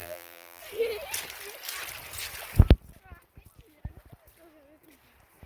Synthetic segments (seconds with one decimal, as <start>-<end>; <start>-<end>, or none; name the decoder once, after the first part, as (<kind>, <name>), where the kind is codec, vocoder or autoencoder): 0.0-0.6 (vocoder, BigVGAN v2)